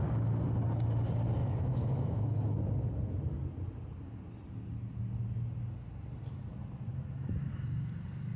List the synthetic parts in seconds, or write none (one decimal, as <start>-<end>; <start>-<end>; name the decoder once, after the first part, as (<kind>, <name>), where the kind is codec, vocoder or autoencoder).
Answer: 1.4-2.7 (autoencoder, DAC-VAE)